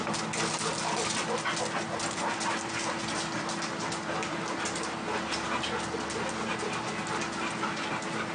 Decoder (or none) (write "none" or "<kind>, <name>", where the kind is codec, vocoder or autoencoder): none